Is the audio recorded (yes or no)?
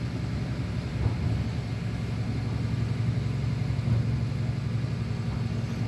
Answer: yes